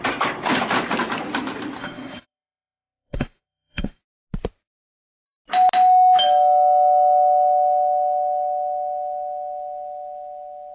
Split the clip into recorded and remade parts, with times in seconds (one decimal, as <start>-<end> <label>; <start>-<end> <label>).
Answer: 0.0-1.8 recorded; 1.8-4.0 remade; 4.0-10.7 recorded